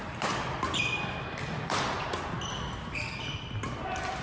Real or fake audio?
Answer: real